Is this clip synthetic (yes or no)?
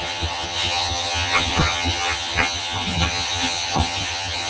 yes